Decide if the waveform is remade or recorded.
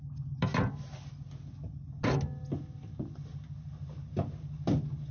recorded